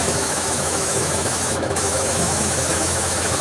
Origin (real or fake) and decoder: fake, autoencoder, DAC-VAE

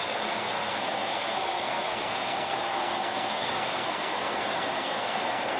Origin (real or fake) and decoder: fake, codec, SNAC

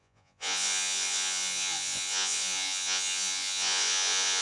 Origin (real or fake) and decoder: fake, vocoder, Vocos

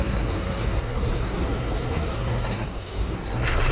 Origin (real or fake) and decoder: fake, codec, SNAC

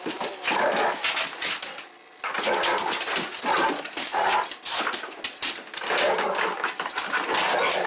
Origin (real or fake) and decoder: real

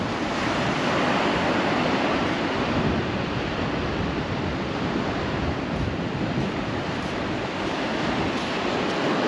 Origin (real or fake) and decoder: fake, vocoder, BigVGAN v2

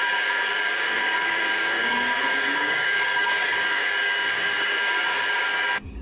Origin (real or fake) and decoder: fake, codec, DAC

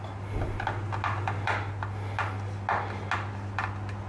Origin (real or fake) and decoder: real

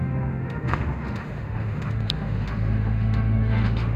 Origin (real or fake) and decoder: fake, autoencoder, DAC-VAE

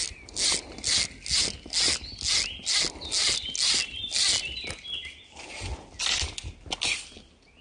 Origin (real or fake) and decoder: real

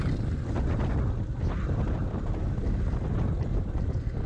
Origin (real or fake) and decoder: real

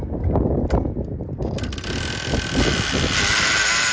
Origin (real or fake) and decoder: real